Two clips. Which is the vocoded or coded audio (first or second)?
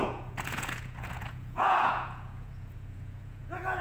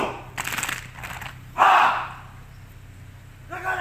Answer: first